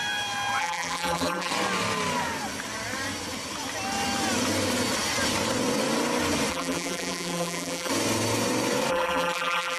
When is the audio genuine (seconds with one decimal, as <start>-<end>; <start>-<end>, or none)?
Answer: 0.0-0.6; 1.5-6.5; 7.9-8.9